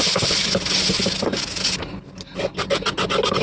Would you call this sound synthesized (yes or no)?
no